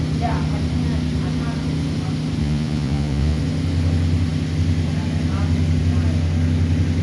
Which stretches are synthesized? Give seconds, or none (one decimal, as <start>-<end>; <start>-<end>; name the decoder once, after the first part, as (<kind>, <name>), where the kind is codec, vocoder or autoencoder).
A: 2.4-3.4 (vocoder, Vocos)